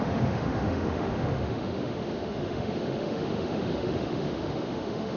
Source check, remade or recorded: remade